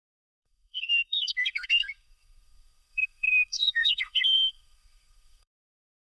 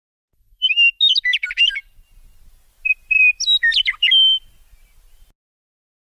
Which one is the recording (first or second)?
second